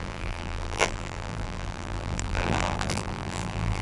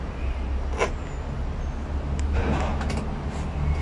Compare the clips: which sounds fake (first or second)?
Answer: first